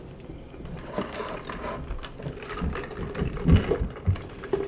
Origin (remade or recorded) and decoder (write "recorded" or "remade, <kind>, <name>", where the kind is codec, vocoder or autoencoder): recorded